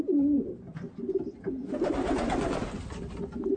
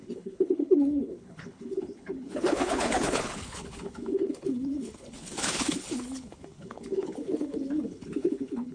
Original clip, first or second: first